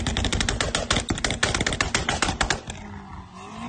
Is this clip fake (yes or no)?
no